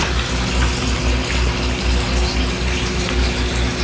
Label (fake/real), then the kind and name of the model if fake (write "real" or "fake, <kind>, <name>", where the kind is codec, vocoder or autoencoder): real